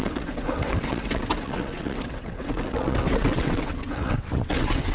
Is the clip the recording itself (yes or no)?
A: no